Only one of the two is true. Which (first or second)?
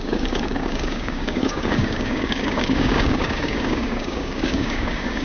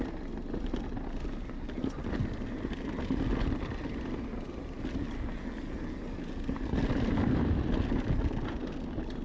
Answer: second